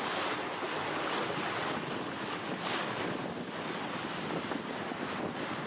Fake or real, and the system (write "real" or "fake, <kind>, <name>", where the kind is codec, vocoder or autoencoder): real